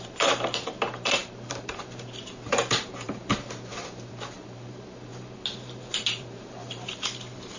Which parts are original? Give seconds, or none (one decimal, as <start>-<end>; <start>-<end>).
5.1-5.9